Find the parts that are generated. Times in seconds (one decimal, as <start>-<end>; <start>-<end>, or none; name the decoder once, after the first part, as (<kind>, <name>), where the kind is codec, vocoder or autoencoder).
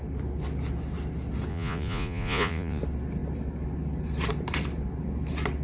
1.5-2.8 (vocoder, Vocos)